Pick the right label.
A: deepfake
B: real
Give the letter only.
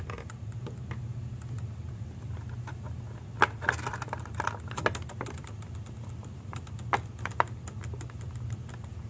B